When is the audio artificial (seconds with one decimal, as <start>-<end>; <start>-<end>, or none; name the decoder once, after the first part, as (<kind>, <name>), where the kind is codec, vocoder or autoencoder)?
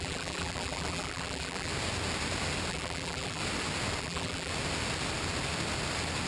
0.0-1.7 (vocoder, BigVGAN v2); 2.7-3.4; 4.0-4.5